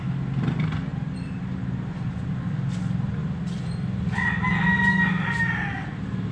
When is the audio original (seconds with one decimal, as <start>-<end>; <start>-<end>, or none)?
0.0-0.9; 1.4-6.3